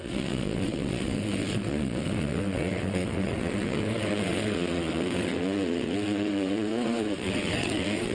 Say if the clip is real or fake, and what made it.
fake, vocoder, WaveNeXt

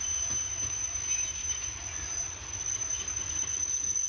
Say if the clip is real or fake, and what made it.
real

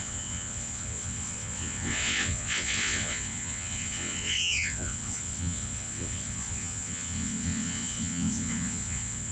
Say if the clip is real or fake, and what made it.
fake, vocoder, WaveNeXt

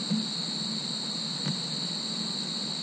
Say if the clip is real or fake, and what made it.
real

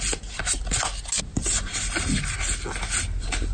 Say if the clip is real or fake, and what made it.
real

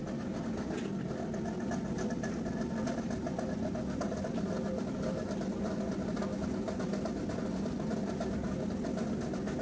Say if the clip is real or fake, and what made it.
real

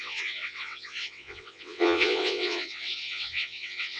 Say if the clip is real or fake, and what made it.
fake, vocoder, WaveNeXt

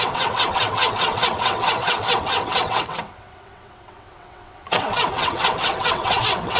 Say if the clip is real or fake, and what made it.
fake, vocoder, WaveNeXt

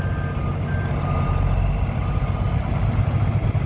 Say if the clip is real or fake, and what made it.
real